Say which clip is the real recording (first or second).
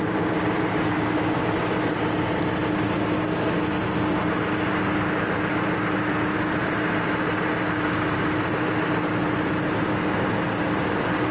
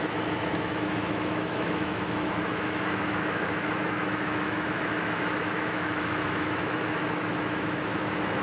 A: first